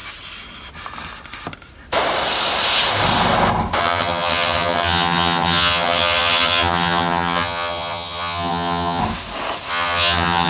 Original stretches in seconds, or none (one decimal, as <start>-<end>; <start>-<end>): 0.0-3.8; 9.0-9.7